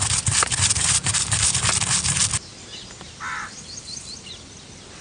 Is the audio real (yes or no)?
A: yes